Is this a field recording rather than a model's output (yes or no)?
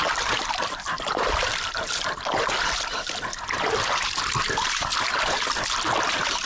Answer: yes